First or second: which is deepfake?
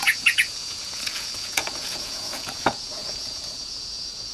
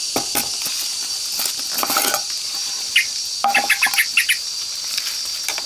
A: first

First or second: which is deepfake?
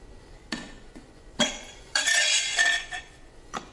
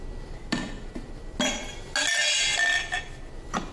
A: first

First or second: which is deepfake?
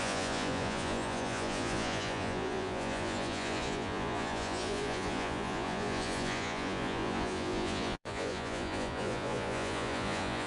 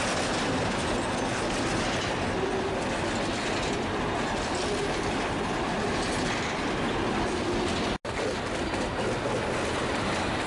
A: first